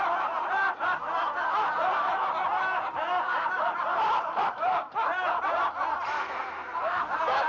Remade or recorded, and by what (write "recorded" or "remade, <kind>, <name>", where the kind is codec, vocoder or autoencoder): remade, vocoder, BigVGAN v2